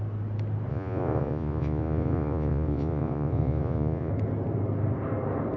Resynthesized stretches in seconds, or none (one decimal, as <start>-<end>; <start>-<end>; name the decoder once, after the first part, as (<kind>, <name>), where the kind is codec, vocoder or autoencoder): 0.7-4.1 (vocoder, Vocos)